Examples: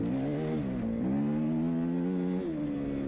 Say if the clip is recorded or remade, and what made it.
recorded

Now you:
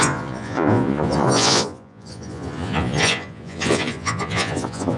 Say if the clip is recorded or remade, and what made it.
remade, vocoder, Vocos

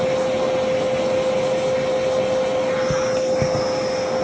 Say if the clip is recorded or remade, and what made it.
recorded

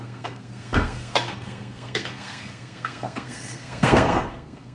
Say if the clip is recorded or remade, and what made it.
remade, codec, SNAC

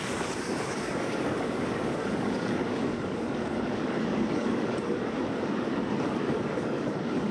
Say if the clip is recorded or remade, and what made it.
remade, codec, DAC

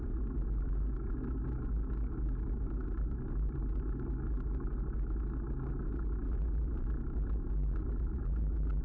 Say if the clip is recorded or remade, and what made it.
recorded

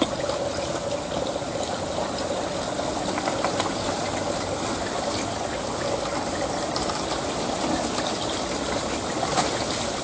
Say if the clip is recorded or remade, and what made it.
recorded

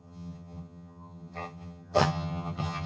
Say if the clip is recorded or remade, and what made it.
remade, vocoder, HiFi-GAN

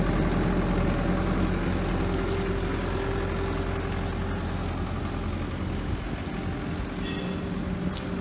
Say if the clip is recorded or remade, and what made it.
recorded